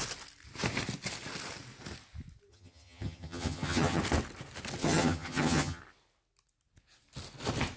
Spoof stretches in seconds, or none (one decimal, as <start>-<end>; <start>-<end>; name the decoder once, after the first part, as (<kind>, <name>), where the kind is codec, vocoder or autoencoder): 2.5-4.0 (vocoder, HiFi-GAN); 4.8-5.8